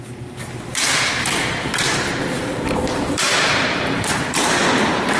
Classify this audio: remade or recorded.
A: remade